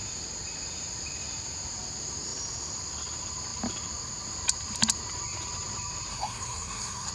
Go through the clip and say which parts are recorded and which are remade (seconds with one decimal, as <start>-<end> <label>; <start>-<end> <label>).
0.0-6.1 recorded; 6.1-7.1 remade